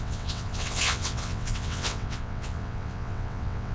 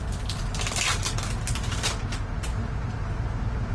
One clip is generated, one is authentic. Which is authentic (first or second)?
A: second